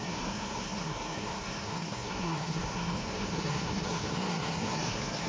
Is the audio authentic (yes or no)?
no